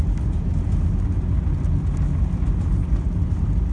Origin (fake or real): real